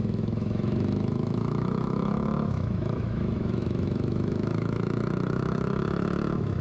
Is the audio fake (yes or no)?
yes